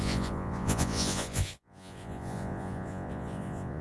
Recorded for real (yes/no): no